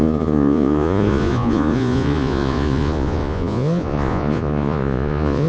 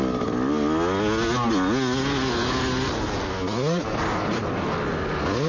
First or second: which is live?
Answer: second